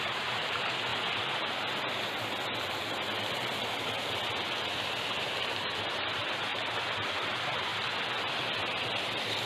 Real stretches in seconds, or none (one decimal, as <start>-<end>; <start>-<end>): 0.9-5.0; 7.7-9.5